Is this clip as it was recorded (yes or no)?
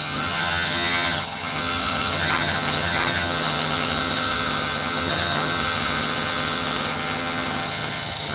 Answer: no